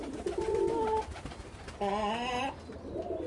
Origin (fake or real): real